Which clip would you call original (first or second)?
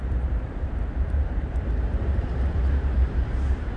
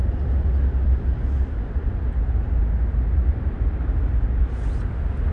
second